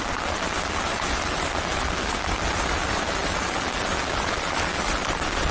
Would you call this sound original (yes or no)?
yes